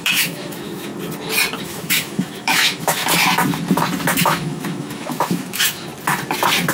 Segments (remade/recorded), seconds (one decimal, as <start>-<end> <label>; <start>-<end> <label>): 0.0-0.9 remade; 0.9-1.6 recorded; 1.6-3.0 remade; 3.0-4.2 recorded; 4.2-5.9 remade; 5.9-6.7 recorded